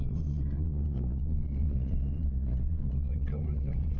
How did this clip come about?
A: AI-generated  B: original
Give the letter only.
A